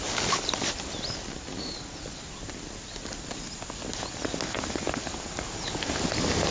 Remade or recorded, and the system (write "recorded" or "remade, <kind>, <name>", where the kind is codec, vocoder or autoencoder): recorded